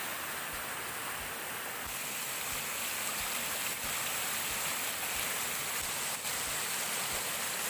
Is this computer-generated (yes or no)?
no